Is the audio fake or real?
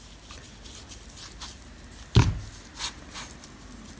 real